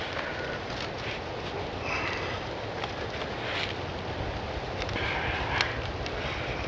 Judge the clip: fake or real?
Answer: real